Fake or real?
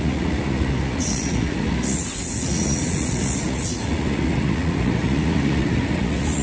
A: fake